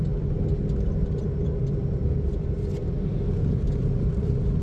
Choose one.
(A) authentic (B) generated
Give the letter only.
A